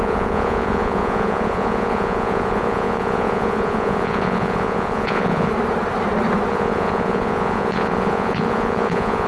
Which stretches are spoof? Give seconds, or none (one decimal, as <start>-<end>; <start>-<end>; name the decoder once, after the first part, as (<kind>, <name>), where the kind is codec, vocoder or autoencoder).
0.0-5.5 (vocoder, Vocos); 6.5-9.3